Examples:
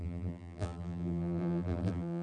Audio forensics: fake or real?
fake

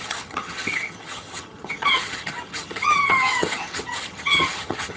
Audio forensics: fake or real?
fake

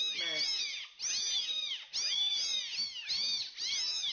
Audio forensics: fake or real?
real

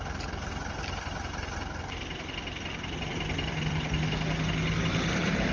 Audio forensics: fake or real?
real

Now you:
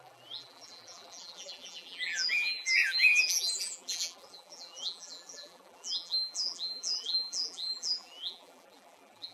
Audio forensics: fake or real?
fake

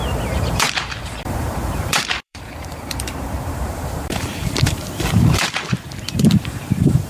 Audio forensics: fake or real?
fake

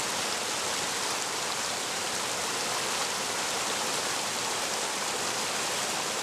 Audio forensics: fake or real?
fake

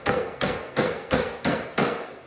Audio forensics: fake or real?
fake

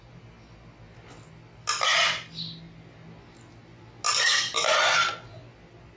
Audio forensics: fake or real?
real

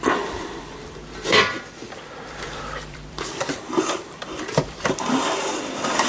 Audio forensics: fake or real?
fake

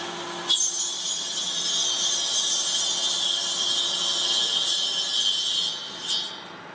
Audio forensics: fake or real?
real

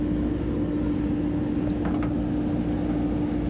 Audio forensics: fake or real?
real